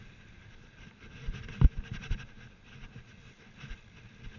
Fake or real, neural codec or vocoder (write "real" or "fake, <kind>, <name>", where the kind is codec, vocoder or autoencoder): real